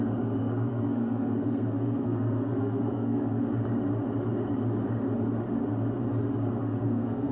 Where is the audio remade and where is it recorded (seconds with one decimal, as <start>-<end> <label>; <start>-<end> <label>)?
0.0-0.4 recorded; 0.4-3.4 remade; 3.4-6.6 recorded; 6.6-7.3 remade